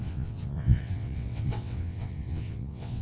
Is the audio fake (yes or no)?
yes